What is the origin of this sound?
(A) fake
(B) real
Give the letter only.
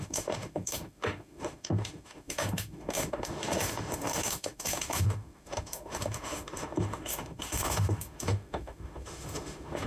A